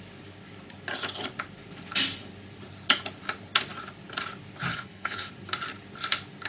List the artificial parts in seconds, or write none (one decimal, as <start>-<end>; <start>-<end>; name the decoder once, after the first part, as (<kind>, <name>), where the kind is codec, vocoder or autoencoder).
4.7-5.3 (codec, HILCodec)